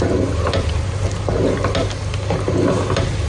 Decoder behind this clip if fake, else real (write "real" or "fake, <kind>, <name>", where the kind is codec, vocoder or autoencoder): real